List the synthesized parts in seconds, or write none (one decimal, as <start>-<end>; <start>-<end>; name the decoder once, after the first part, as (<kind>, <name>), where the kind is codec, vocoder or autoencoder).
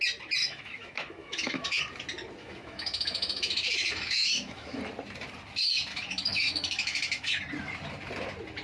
0.4-1.8 (autoencoder, DAC-VAE); 2.4-4.8; 5.9-7.4